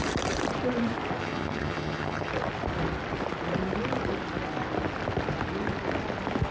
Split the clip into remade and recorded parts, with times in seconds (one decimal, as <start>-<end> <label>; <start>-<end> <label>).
0.0-1.2 recorded; 1.2-2.3 remade; 2.3-6.5 recorded